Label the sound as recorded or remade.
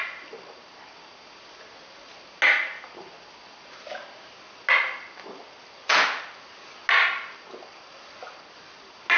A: recorded